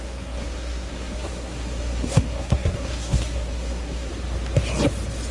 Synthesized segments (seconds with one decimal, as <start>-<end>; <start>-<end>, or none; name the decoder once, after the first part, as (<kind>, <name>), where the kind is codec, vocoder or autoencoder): 0.0-4.1 (codec, SNAC)